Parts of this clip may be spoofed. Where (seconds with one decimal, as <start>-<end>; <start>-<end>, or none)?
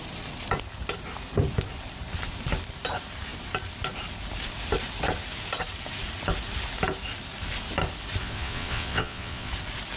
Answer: 8.2-9.5